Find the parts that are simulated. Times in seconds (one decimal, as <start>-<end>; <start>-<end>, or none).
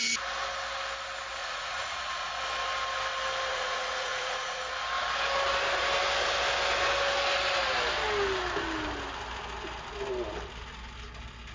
1.4-2.3; 3.5-4.6